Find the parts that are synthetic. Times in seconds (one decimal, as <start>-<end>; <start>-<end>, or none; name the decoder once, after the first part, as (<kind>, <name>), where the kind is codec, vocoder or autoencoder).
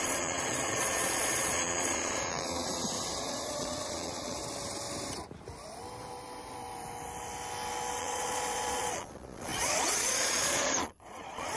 0.0-4.4 (vocoder, Vocos); 8.0-11.6